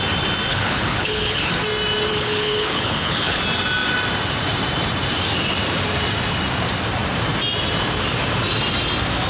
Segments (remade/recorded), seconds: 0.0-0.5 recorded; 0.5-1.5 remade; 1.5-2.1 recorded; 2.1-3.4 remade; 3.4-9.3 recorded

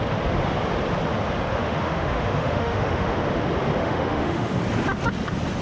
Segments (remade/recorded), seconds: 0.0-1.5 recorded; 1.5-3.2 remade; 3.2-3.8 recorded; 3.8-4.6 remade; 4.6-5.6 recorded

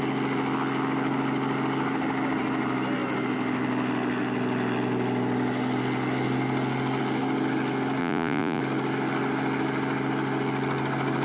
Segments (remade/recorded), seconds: 0.0-8.0 recorded; 8.0-8.6 remade; 8.6-11.2 recorded